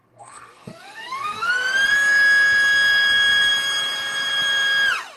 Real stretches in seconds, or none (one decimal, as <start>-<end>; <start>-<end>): 1.5-5.2